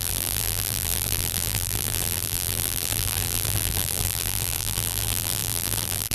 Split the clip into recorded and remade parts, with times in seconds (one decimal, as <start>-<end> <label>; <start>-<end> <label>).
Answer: 0.0-6.1 remade